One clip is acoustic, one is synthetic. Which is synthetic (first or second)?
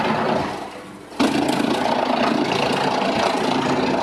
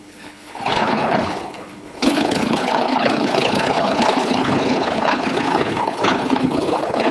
second